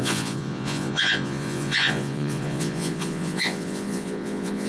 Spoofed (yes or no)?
yes